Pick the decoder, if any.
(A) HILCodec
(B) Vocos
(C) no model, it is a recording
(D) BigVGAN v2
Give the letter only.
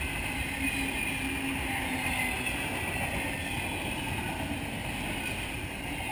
C